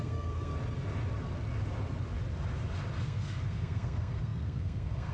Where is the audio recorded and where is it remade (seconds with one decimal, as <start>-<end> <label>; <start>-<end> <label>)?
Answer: 0.0-0.5 remade; 0.5-3.0 recorded; 3.0-5.1 remade